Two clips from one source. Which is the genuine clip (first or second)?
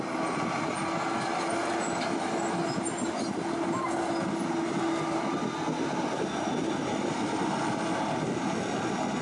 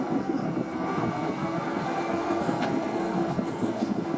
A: first